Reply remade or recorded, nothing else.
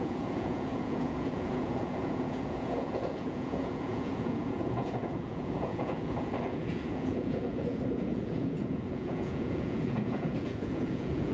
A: remade